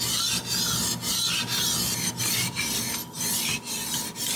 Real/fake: real